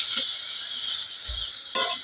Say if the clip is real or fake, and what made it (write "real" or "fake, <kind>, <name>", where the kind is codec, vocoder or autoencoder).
real